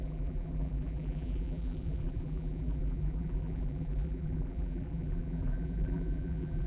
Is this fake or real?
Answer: fake